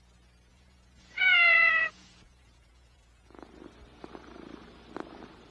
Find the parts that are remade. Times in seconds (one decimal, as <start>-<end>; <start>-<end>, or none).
0.5-3.5